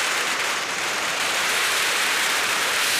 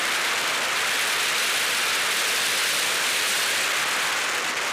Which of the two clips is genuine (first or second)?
second